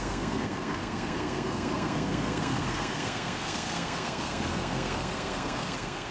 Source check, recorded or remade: remade